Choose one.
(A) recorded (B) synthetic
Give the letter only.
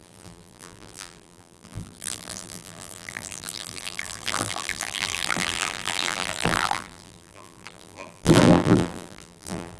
B